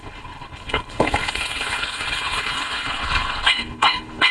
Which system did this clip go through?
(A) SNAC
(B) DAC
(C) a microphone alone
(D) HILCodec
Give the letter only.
D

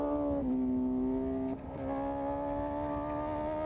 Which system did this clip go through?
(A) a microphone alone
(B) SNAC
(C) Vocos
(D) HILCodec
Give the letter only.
A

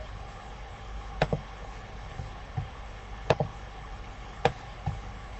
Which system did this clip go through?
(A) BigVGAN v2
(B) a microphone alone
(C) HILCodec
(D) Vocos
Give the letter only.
C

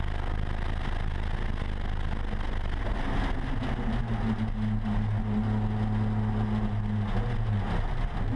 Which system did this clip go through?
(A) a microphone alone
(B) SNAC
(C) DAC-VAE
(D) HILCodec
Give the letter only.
A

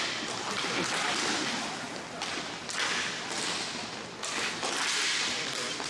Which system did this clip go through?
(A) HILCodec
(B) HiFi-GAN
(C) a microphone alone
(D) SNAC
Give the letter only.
C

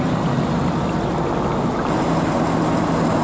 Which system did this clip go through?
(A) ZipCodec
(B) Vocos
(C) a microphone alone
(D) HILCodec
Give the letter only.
C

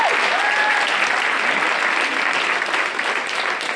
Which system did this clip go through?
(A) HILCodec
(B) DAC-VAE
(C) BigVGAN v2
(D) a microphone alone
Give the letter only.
D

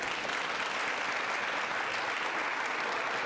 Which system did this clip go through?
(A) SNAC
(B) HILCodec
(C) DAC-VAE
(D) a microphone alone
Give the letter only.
D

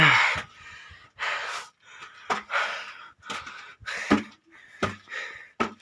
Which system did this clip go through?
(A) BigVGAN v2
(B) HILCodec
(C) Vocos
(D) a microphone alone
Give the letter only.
D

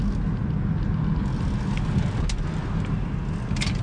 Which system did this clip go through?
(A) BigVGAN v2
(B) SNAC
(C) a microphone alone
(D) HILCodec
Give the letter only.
C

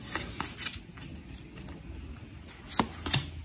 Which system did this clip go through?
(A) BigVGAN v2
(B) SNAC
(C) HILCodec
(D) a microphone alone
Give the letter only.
D